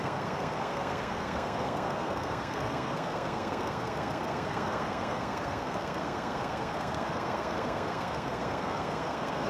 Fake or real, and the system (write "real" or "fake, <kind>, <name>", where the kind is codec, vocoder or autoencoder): fake, codec, SNAC